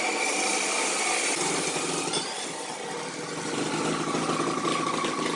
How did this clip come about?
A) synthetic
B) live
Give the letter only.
B